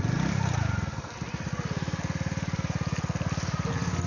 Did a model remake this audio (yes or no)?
no